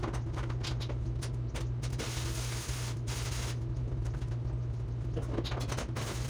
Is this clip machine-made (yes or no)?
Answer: no